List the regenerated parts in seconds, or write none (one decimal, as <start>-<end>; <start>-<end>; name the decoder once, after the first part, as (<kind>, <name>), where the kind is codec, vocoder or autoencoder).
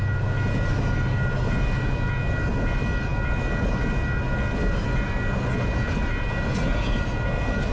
none